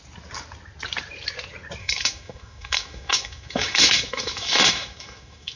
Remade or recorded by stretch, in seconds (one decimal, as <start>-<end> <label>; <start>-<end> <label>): 0.0-1.8 recorded; 1.8-5.6 remade